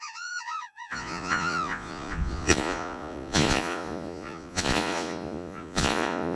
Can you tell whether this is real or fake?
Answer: fake